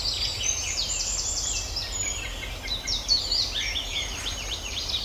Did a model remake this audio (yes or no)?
yes